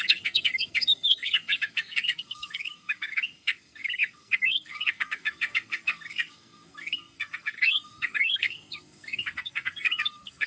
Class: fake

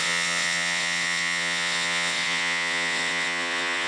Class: fake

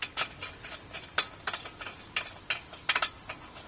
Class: real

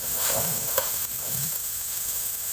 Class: fake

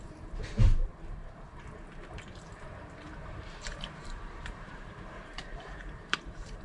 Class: fake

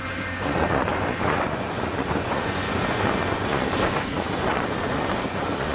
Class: fake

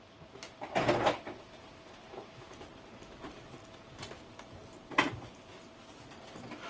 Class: real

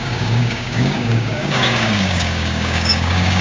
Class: fake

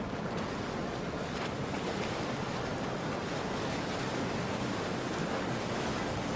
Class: real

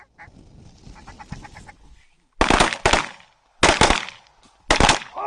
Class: real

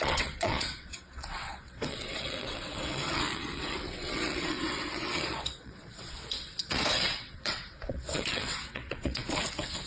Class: fake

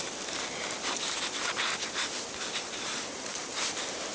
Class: real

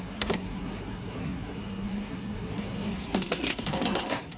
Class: fake